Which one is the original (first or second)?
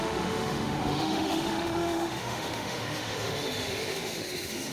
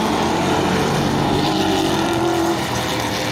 second